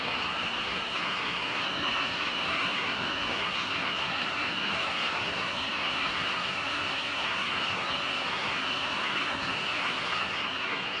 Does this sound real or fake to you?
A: fake